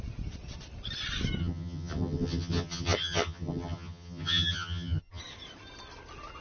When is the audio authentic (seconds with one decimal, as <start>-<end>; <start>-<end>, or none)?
0.0-1.4; 5.2-6.4